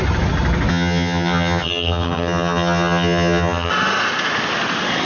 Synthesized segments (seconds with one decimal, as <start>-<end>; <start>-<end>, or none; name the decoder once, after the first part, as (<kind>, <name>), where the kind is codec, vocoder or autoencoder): 0.7-3.7 (vocoder, HiFi-GAN)

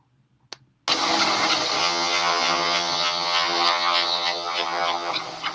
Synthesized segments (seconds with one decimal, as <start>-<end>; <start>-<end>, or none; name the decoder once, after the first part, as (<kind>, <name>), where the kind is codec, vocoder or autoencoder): 1.8-5.1 (vocoder, HiFi-GAN)

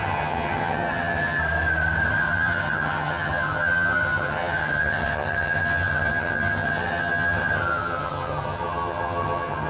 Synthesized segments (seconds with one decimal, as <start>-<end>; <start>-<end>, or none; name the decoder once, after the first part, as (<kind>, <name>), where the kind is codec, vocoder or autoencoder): 0.0-1.4 (vocoder, HiFi-GAN); 2.1-9.7

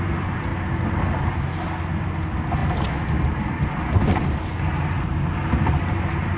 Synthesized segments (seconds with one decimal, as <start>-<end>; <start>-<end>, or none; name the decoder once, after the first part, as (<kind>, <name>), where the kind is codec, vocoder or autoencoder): none

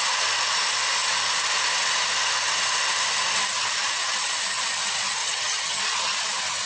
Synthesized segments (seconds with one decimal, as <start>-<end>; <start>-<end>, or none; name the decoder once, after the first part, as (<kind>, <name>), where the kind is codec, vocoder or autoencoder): 5.2-5.8 (vocoder, HiFi-GAN)

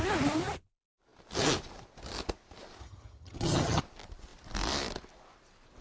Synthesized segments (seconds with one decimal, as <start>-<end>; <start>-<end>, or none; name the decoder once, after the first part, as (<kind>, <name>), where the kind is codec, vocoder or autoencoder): 2.8-3.8 (vocoder, HiFi-GAN)